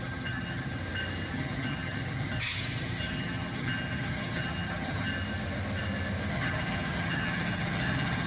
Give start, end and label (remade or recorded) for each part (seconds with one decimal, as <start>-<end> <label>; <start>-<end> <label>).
0.0-0.8 remade; 0.8-1.3 recorded; 1.3-5.1 remade; 5.1-6.3 recorded; 6.3-8.3 remade